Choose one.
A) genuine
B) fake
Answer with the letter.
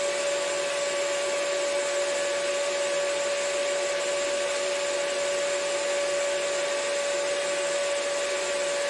A